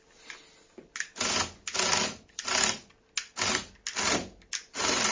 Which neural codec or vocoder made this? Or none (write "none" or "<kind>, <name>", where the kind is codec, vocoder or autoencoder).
none